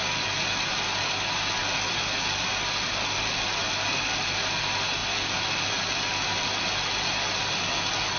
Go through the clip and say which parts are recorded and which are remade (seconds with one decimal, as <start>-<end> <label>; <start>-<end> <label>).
0.0-8.2 recorded